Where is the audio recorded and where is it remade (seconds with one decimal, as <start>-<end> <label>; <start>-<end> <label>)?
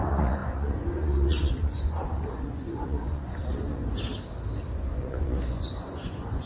0.0-3.8 remade; 3.8-4.7 recorded; 4.7-6.5 remade